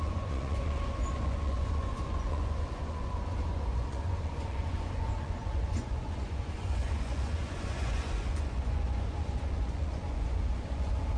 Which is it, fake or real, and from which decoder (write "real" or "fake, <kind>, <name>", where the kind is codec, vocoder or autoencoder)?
fake, vocoder, Vocos